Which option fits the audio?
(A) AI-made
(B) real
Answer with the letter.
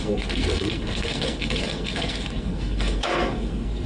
A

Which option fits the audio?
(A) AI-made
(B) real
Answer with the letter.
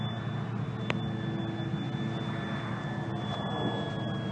B